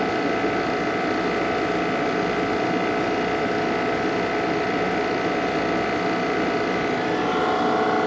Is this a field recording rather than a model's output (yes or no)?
yes